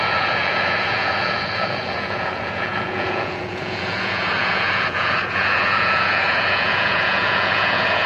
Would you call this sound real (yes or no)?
no